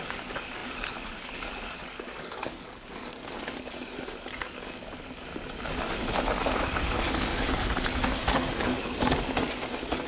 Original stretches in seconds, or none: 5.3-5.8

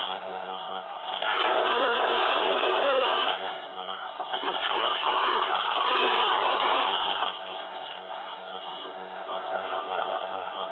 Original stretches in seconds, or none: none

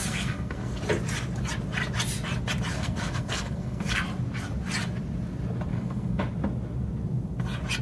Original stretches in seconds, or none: 0.8-2.7; 4.0-5.7; 6.2-7.8